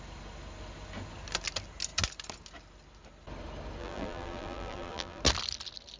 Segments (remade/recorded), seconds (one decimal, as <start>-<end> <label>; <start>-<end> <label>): 0.0-3.8 recorded; 3.8-5.2 remade; 5.2-6.0 recorded